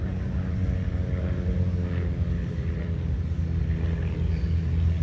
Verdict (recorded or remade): recorded